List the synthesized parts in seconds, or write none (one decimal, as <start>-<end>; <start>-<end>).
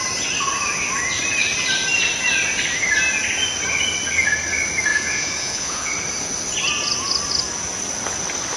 4.9-5.9